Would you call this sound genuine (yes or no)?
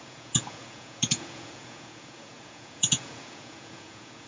no